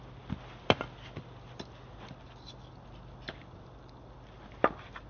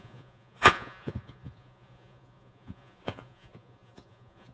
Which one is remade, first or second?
second